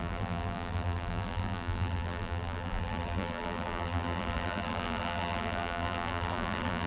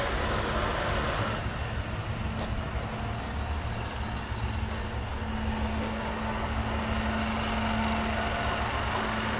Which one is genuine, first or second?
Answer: second